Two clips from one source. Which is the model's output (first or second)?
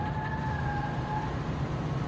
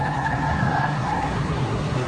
second